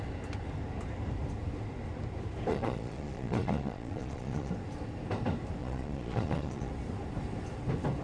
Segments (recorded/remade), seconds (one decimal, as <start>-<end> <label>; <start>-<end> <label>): 0.0-2.5 recorded; 2.5-4.5 remade; 4.5-5.6 recorded; 5.6-6.7 remade; 6.7-8.0 recorded